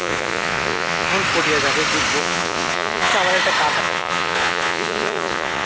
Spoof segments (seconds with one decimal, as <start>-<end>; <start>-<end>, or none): 0.0-1.1; 2.2-3.1; 3.8-5.7